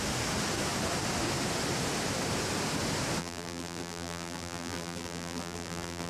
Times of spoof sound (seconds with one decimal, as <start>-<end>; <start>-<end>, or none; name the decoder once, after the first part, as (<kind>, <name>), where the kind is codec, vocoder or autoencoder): 3.2-6.1 (vocoder, BigVGAN v2)